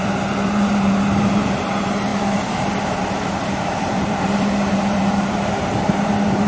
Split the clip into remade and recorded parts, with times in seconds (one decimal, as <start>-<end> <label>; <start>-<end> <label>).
0.0-6.5 remade